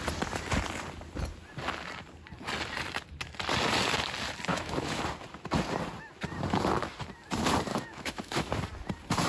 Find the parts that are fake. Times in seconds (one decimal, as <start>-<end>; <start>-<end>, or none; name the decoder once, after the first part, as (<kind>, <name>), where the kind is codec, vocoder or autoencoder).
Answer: 4.5-5.0 (autoencoder, DAC-VAE); 7.7-8.5